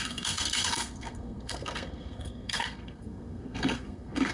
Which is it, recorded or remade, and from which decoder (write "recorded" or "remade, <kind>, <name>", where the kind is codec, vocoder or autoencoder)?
remade, codec, SNAC